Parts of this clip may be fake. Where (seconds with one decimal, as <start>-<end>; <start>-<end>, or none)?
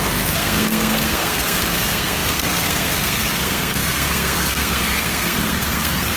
0.0-6.2